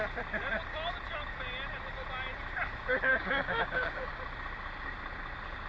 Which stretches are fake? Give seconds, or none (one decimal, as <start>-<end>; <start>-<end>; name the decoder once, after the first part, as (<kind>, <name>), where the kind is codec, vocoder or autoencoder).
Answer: 3.1-4.1 (codec, DAC)